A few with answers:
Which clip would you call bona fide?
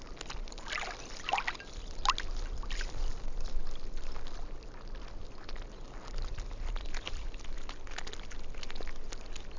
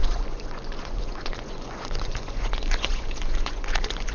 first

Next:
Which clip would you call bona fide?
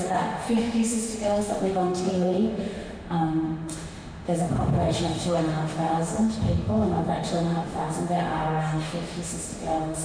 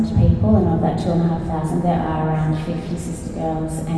second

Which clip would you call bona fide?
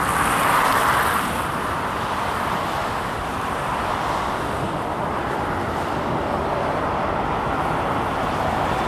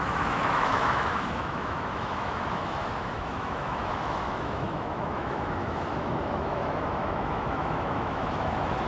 first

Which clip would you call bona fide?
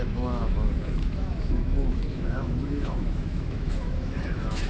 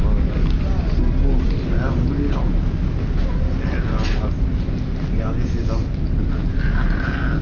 second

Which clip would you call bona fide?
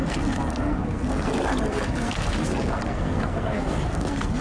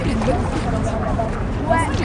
second